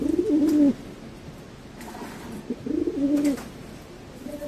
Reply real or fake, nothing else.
real